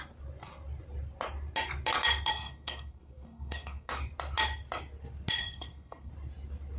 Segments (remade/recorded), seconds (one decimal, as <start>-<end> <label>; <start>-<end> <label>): 0.0-2.3 recorded; 2.3-3.9 remade; 3.9-5.4 recorded; 5.4-6.1 remade; 6.1-6.8 recorded